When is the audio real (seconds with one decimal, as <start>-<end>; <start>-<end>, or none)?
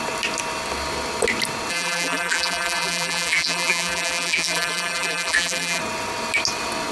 0.0-1.7; 5.8-6.9